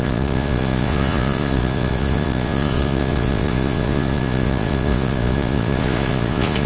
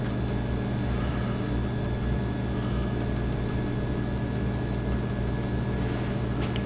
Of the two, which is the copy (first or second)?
first